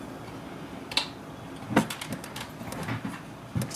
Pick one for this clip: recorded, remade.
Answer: recorded